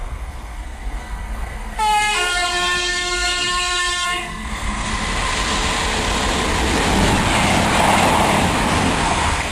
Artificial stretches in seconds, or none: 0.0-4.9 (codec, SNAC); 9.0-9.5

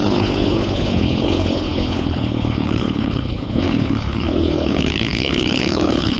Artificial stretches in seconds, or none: 0.0-6.2 (codec, HILCodec)

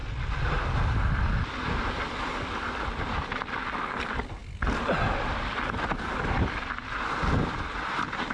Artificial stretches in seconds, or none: none

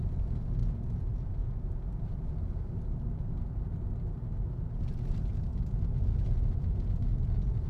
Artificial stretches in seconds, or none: 0.6-2.3 (vocoder, Vocos); 5.5-7.7

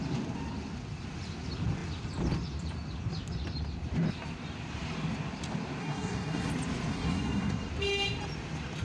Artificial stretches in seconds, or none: 5.8-6.5 (codec, SNAC); 6.9-7.7

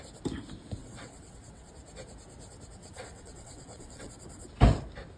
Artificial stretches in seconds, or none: 0.8-1.7 (vocoder, WaveNeXt); 2.8-4.1

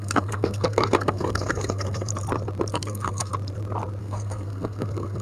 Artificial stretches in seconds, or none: 0.0-2.1 (codec, SNAC); 2.7-3.3; 4.0-5.2

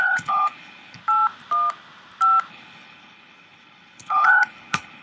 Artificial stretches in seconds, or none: 0.0-1.0 (codec, HILCodec); 2.5-5.0